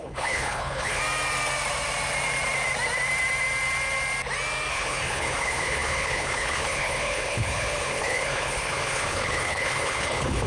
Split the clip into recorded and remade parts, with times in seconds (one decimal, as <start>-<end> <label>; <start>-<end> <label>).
0.0-1.0 remade; 1.0-4.7 recorded; 4.7-10.5 remade